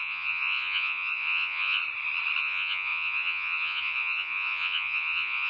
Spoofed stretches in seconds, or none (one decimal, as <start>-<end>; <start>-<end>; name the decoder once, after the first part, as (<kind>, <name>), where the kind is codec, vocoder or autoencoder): 0.0-1.8 (vocoder, Vocos); 2.4-5.5